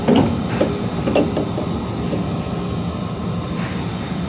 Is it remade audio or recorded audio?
recorded